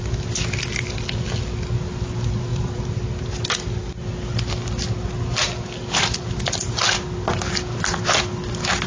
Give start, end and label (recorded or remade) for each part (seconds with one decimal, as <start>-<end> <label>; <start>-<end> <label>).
0.0-8.9 recorded